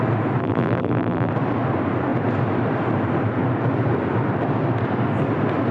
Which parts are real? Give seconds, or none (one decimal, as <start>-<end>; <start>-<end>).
0.0-0.4; 1.3-5.7